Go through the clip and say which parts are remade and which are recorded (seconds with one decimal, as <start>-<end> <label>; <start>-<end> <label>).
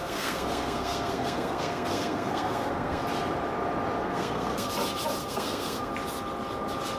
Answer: 0.0-3.0 remade; 3.0-4.0 recorded; 4.0-4.7 remade; 4.7-5.2 recorded; 5.2-5.9 remade; 5.9-7.0 recorded